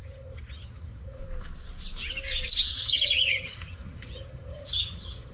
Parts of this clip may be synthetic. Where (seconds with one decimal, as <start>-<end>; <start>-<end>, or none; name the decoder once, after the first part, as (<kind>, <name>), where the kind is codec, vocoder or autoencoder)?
0.0-1.2 (vocoder, HiFi-GAN); 2.7-5.3

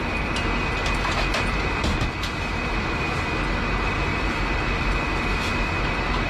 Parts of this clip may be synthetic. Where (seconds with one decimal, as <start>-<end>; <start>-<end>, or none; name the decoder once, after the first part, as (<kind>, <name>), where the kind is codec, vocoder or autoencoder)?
none

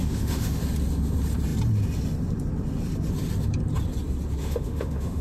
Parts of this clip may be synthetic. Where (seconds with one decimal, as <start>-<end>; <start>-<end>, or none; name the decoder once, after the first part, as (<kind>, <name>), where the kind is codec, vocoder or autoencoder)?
0.0-0.6 (autoencoder, DAC-VAE); 4.4-5.2

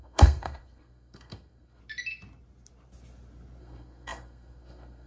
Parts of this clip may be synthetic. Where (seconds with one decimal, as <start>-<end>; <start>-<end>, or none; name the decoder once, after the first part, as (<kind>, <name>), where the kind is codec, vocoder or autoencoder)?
0.0-1.8 (codec, SNAC); 3.6-5.1